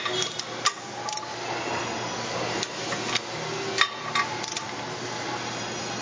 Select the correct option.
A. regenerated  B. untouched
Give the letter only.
B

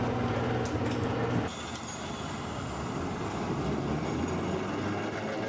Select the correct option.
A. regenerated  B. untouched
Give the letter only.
B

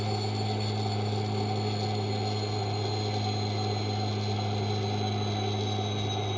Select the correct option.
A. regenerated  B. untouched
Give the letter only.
B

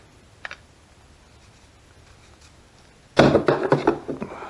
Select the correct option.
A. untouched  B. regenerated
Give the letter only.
A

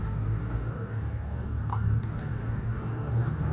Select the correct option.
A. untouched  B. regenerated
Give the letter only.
B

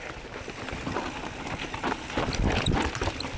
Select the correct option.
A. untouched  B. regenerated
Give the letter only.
A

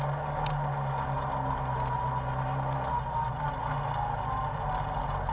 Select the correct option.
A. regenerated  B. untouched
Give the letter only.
B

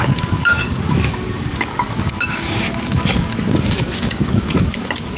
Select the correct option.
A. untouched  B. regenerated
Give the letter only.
B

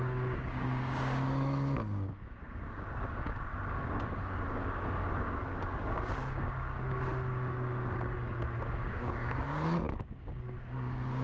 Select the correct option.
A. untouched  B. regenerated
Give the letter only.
B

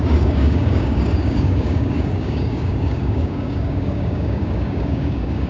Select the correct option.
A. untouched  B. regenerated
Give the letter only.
B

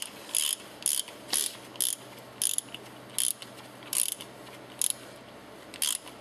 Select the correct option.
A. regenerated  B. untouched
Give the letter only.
B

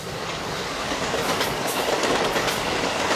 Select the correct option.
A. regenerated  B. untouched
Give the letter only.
A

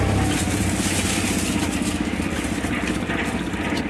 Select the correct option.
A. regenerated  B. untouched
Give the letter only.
B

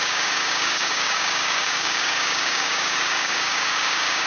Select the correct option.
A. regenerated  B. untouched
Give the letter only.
A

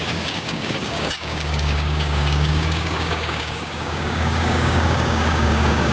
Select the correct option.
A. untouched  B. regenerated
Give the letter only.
B